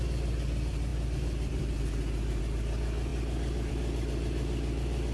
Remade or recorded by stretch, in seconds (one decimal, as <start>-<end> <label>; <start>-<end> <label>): 0.0-5.1 recorded